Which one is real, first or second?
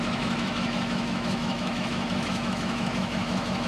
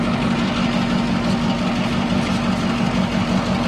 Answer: second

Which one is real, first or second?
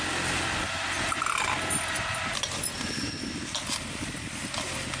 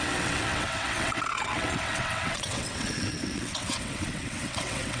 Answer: first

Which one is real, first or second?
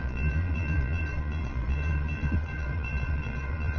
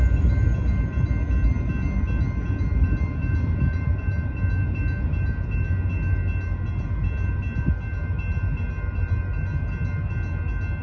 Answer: second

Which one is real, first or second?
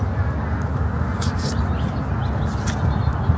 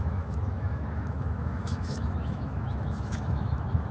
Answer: first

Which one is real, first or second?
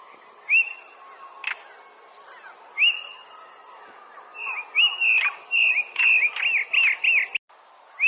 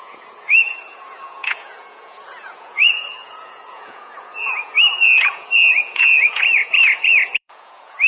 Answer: first